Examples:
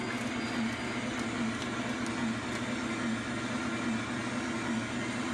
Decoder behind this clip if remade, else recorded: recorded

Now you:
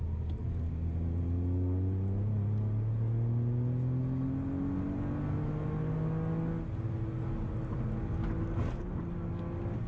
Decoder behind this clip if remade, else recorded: recorded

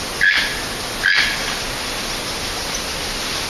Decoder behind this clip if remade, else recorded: recorded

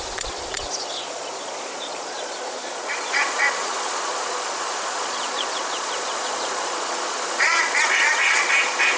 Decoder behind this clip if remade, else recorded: remade, vocoder, Vocos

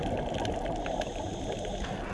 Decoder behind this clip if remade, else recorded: recorded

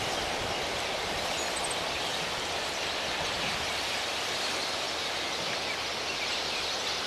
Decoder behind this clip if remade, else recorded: remade, vocoder, BigVGAN v2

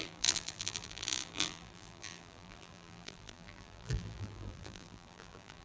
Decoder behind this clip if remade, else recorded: remade, vocoder, BigVGAN v2